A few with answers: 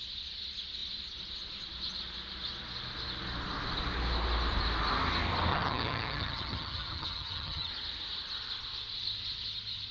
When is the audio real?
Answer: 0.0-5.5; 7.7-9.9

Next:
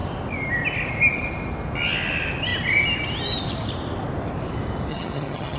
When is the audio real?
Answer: 0.0-4.9

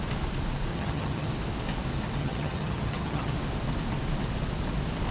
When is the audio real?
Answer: 0.0-0.7; 1.3-2.2; 3.3-5.1